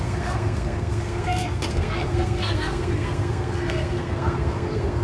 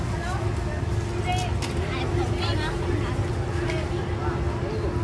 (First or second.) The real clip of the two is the second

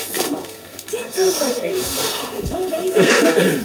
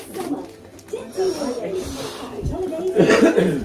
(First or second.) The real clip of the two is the second